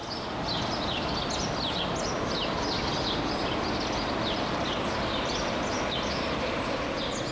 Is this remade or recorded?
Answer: recorded